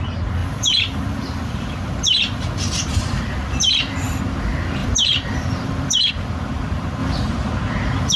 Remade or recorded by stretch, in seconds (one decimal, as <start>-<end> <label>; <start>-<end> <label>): 0.0-0.4 recorded; 0.4-4.2 remade; 4.2-4.8 recorded; 4.8-6.1 remade; 6.1-8.2 recorded